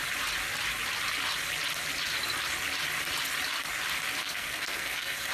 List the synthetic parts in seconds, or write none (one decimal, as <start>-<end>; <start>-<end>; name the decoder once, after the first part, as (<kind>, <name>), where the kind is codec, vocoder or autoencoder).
4.2-5.3 (codec, SNAC)